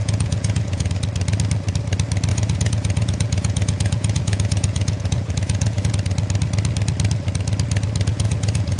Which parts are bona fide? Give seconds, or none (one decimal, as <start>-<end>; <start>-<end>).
0.9-2.3; 5.9-8.1